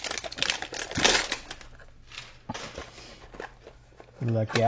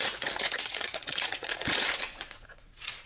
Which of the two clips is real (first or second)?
first